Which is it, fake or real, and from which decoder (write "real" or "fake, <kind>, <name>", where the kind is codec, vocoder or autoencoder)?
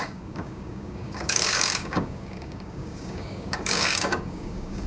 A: fake, codec, DAC